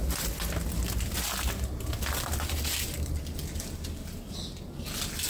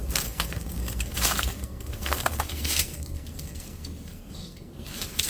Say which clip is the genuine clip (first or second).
first